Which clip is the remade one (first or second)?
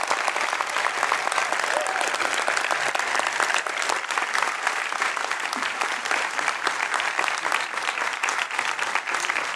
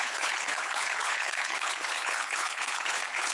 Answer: second